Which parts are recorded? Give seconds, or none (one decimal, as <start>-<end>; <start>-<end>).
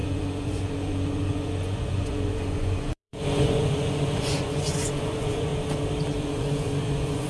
5.5-6.2